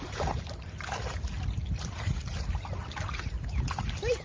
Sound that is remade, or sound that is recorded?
recorded